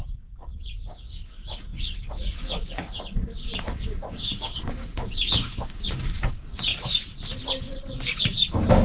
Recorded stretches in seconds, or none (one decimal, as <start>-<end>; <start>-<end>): 6.7-8.2